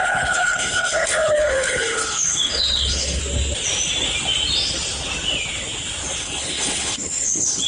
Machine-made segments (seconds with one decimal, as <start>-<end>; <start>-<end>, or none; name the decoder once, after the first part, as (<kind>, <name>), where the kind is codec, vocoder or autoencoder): 0.0-3.2 (codec, HILCodec); 6.2-7.7